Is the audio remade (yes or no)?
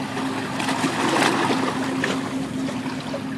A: no